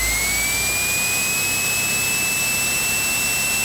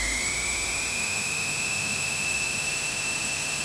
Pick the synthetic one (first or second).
second